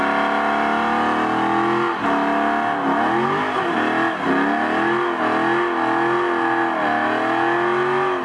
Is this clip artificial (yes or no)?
no